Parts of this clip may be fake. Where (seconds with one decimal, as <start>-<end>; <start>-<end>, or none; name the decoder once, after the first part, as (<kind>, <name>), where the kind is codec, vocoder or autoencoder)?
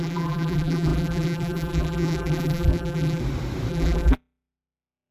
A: 0.0-3.2 (vocoder, BigVGAN v2); 3.7-5.1